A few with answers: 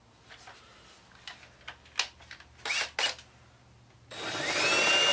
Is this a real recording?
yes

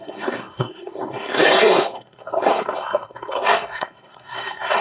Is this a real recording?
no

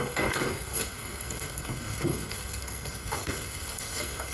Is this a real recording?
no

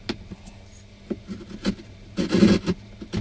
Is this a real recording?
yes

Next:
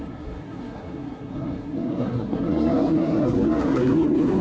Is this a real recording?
no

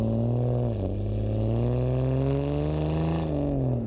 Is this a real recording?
yes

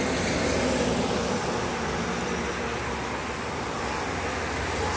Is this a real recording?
yes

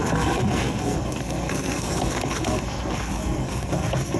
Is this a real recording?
no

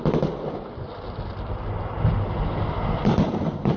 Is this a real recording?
no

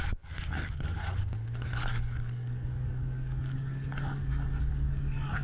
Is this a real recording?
no